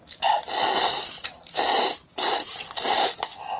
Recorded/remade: recorded